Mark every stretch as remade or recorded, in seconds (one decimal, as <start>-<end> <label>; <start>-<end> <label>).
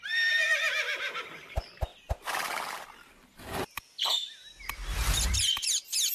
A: 0.0-6.1 remade